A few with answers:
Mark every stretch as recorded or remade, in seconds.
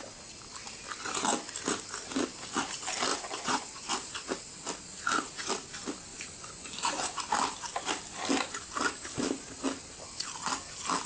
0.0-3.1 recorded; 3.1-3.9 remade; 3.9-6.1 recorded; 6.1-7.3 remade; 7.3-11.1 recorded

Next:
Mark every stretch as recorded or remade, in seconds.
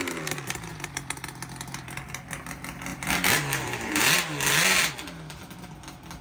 0.0-2.9 recorded; 2.9-3.9 remade; 3.9-6.2 recorded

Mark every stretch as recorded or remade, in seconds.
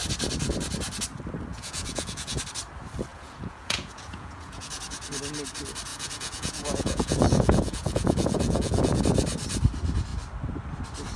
0.0-1.5 recorded; 1.5-2.4 remade; 2.4-3.1 recorded; 3.1-4.8 remade; 4.8-5.9 recorded; 5.9-9.0 remade; 9.0-11.2 recorded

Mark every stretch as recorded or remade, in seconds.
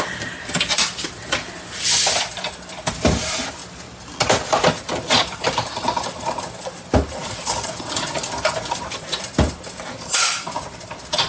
0.0-3.6 remade; 3.6-4.7 recorded; 4.7-11.3 remade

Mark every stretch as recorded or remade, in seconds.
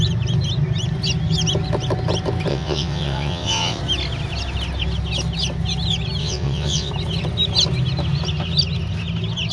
0.0-2.5 recorded; 2.5-3.8 remade; 3.8-6.2 recorded; 6.2-6.9 remade; 6.9-9.5 recorded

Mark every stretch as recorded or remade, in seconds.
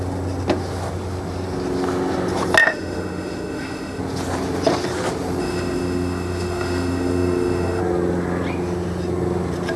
0.0-2.6 recorded; 2.6-4.0 remade; 4.0-5.4 recorded; 5.4-7.8 remade; 7.8-9.8 recorded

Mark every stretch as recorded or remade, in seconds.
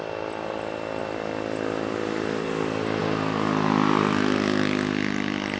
0.0-5.6 recorded